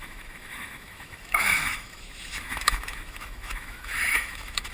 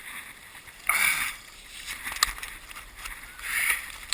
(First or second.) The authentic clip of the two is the second